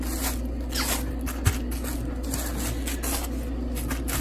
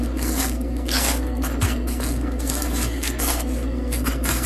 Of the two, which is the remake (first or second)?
second